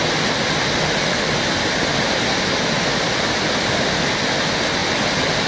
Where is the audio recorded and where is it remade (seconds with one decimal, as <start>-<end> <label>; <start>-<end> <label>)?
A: 0.0-5.5 recorded